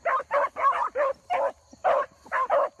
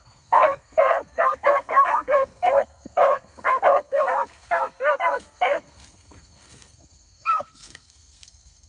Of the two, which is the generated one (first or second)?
second